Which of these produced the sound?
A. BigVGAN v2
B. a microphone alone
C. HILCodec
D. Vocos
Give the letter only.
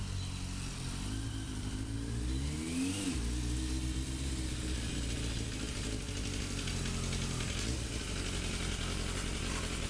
B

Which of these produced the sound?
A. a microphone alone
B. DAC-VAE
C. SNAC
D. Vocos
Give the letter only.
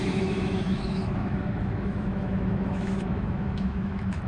B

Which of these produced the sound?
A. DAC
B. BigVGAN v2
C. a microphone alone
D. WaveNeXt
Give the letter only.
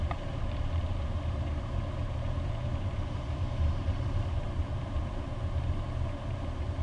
B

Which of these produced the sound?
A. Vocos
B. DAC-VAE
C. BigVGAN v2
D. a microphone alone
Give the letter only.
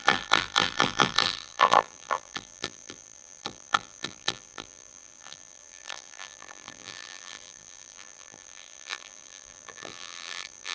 C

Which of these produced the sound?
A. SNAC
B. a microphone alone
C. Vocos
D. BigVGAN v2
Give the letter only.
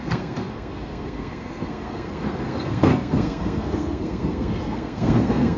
A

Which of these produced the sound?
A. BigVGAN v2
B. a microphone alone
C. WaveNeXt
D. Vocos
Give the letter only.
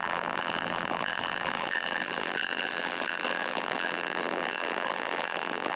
A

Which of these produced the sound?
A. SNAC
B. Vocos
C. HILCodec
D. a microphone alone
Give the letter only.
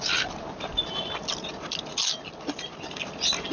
D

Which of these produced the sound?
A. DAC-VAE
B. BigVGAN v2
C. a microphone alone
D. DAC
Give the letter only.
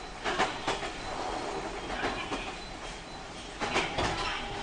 C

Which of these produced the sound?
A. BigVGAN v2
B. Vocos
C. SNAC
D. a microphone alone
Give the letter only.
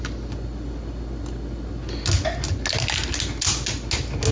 D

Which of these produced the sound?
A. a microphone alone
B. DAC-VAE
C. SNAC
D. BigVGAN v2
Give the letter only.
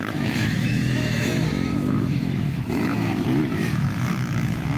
B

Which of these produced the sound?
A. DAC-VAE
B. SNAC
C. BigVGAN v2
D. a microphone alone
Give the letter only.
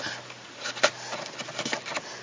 D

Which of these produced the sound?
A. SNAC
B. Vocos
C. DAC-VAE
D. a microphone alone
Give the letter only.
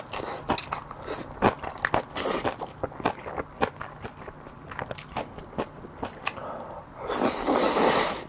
D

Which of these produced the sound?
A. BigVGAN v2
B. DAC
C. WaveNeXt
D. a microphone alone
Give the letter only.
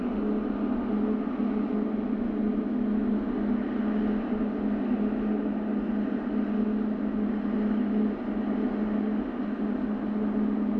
D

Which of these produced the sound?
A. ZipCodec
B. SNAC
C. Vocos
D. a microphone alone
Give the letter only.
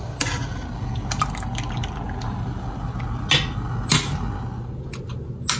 D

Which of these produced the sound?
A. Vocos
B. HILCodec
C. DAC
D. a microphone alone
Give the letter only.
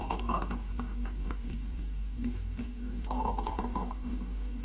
C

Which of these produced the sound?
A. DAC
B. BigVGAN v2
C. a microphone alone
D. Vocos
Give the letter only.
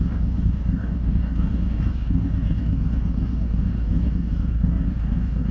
A